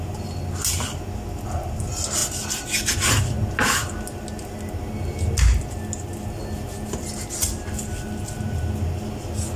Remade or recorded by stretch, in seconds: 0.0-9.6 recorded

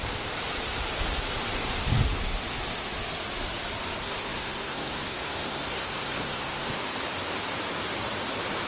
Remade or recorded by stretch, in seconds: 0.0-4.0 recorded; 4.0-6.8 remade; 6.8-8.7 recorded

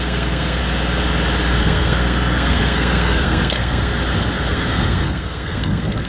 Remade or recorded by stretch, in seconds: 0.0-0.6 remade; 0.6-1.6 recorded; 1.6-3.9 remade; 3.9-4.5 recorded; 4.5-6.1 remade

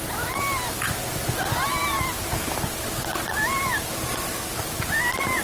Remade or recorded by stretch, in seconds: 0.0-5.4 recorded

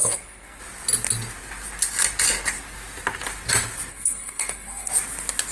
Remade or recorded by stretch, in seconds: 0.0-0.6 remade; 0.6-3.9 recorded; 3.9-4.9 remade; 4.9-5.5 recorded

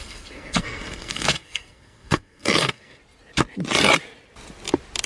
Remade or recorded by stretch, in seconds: 0.0-3.0 remade; 3.0-5.1 recorded